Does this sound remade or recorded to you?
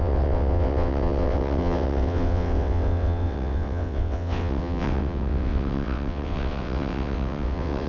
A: remade